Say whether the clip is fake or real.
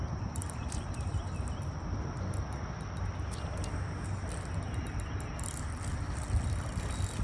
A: real